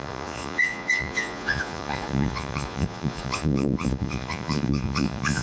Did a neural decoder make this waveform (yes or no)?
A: yes